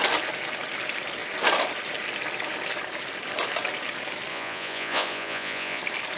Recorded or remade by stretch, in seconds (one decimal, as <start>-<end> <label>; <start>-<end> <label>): 0.0-4.3 recorded; 4.3-5.8 remade; 5.8-6.2 recorded